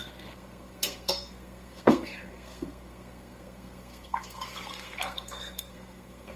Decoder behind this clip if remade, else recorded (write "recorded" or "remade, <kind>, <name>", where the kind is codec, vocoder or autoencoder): remade, codec, SNAC